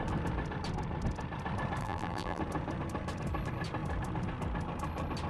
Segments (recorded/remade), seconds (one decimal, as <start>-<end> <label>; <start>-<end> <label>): 0.0-1.8 recorded; 1.8-2.4 remade; 2.4-5.3 recorded